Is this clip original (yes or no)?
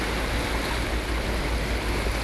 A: yes